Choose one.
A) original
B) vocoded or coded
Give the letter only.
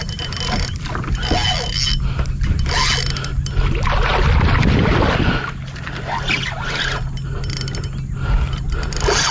A